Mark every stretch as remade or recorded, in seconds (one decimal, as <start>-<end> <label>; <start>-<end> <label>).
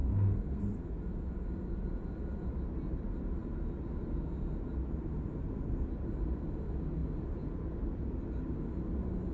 0.0-0.6 remade; 0.6-9.3 recorded